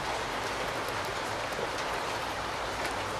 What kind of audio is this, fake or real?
real